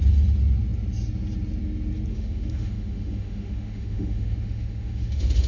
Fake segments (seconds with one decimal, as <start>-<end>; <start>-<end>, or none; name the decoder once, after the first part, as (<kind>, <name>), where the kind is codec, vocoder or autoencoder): 2.1-5.5 (autoencoder, DAC-VAE)